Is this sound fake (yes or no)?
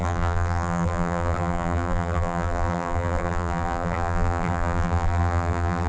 yes